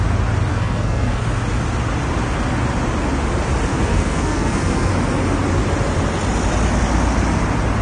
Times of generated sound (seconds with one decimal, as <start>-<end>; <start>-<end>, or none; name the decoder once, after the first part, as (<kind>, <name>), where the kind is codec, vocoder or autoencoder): 0.5-1.2 (codec, SNAC); 3.7-4.9